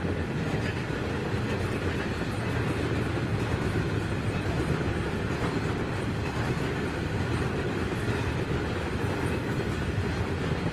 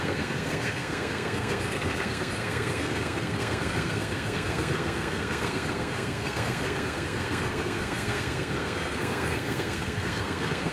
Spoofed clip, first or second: second